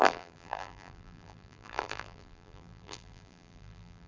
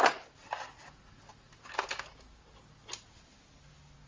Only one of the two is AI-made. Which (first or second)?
first